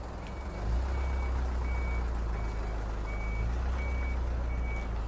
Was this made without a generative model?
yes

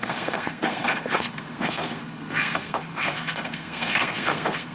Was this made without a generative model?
no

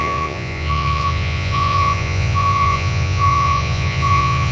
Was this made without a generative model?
no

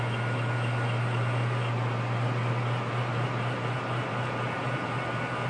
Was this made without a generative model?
yes